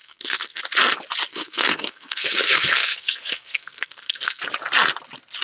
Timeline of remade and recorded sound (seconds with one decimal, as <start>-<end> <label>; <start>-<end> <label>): 0.0-0.6 remade; 0.6-1.3 recorded; 1.3-4.4 remade; 4.4-5.4 recorded